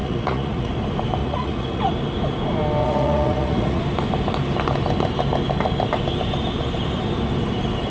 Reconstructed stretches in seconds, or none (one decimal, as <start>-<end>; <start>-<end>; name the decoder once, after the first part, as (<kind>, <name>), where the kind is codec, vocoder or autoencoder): 0.0-0.7 (vocoder, Vocos); 1.2-1.9; 2.8-3.8